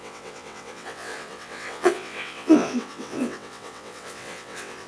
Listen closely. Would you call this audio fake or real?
fake